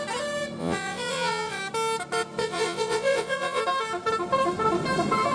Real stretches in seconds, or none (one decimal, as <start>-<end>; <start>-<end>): 0.0-0.6; 1.6-2.4; 3.6-5.3